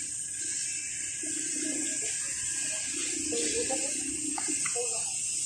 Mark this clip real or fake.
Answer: real